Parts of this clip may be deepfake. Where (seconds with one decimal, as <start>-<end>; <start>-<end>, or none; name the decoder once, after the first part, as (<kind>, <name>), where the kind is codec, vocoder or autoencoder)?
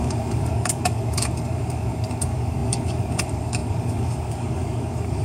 0.0-5.2 (codec, DAC)